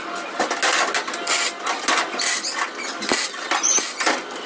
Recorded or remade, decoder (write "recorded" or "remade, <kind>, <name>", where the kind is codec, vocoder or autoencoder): recorded